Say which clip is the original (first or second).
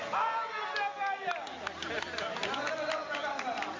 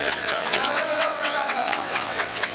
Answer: first